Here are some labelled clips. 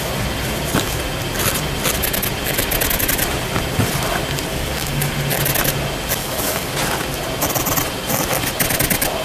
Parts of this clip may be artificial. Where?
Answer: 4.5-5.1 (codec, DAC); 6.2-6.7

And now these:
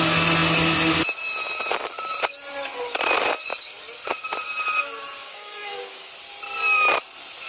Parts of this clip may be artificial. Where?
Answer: 5.2-6.1 (codec, DAC)

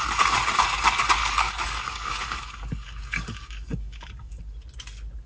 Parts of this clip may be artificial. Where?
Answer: 1.2-4.4 (codec, DAC)

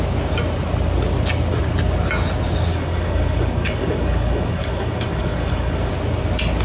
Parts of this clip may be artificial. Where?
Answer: 2.7-5.9 (codec, DAC)